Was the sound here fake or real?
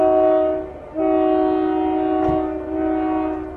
real